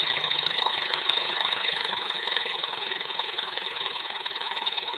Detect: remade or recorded remade